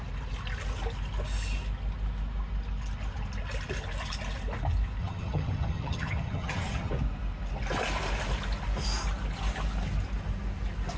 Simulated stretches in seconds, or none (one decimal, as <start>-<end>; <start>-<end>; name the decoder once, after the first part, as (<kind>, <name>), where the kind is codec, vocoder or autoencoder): 5.0-6.9 (vocoder, HiFi-GAN)

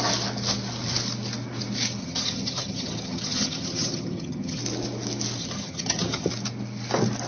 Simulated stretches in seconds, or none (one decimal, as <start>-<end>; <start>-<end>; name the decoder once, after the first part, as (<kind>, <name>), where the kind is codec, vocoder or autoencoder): 2.0-4.6 (vocoder, HiFi-GAN); 5.4-6.3

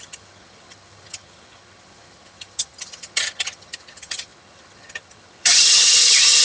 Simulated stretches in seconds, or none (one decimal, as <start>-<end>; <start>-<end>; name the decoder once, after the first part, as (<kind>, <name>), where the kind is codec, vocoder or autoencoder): 0.0-6.4 (vocoder, HiFi-GAN)

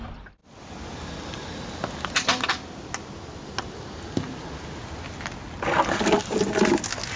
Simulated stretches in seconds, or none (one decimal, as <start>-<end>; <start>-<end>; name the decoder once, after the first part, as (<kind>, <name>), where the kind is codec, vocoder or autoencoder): none

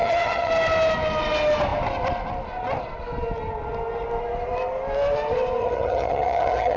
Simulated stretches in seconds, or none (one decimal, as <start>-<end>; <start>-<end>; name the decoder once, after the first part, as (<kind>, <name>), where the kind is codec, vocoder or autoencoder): 0.0-0.5 (vocoder, HiFi-GAN); 5.6-6.8

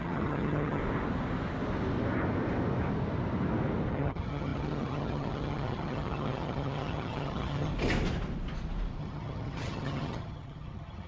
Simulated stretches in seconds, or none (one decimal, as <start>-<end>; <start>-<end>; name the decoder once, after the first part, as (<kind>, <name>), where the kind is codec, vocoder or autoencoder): 0.0-0.8 (vocoder, HiFi-GAN); 3.9-7.7; 9.0-11.1